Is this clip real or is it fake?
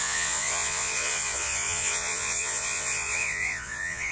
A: fake